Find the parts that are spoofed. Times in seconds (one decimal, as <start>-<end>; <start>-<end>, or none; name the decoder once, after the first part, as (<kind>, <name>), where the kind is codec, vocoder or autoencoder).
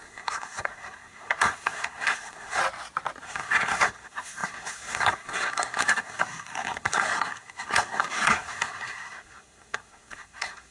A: 0.0-2.6 (codec, SNAC); 3.2-10.7